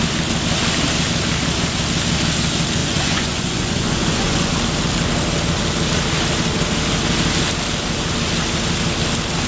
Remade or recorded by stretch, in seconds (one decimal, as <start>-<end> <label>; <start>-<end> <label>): 0.0-2.8 recorded; 2.8-4.5 remade; 4.5-9.5 recorded